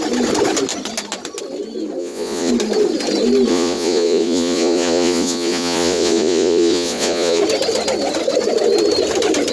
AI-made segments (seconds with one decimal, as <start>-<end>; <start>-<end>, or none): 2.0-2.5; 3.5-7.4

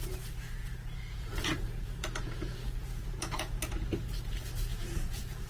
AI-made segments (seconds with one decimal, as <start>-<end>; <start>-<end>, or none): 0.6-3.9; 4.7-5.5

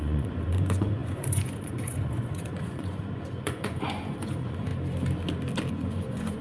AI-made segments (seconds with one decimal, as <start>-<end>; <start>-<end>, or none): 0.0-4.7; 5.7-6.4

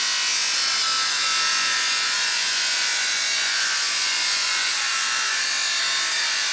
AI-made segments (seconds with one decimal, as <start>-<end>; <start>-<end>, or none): 1.5-5.4

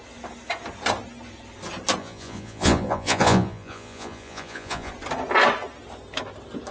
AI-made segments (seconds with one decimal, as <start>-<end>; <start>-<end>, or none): 2.0-4.9

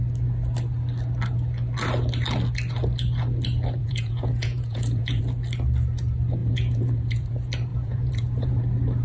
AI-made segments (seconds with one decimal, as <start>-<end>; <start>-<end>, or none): 3.8-5.2; 6.4-7.3; 7.7-8.6